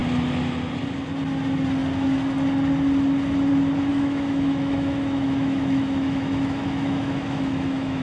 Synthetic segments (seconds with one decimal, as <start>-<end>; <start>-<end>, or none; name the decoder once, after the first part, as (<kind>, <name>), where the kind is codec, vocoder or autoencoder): 3.9-8.0 (autoencoder, DAC-VAE)